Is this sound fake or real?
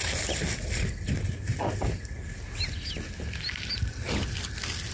real